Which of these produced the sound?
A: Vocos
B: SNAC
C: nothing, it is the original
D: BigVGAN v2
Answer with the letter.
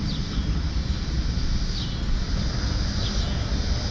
C